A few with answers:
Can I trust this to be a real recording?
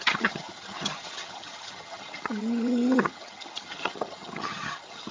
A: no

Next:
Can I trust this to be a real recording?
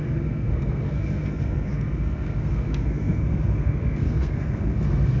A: no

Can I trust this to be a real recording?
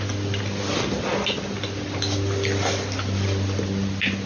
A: yes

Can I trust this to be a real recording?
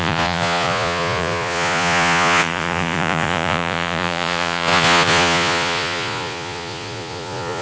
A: no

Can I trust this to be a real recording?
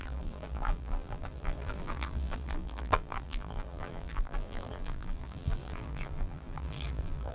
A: no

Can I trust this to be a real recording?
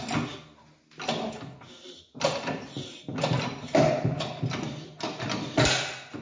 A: yes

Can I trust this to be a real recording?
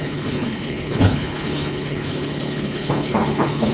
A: no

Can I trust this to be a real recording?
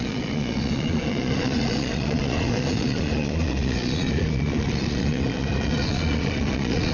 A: no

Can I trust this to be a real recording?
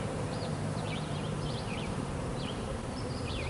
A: no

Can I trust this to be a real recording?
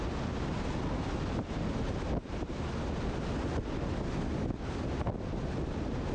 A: yes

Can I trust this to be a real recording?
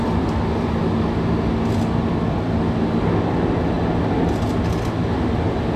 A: yes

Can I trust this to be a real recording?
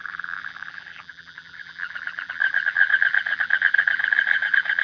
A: no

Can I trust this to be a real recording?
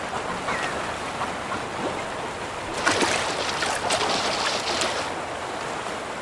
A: yes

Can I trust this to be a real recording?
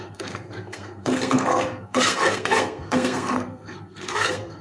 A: no